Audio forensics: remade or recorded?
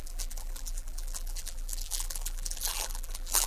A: remade